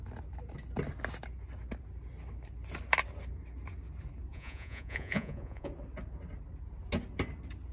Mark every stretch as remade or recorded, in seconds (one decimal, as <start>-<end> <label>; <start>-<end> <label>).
0.0-4.3 recorded; 4.3-5.7 remade; 5.7-7.7 recorded